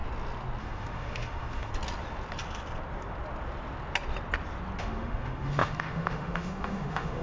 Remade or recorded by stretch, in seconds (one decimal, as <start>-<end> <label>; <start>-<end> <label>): 0.0-0.6 recorded; 0.6-1.7 remade; 1.7-4.8 recorded; 4.8-7.2 remade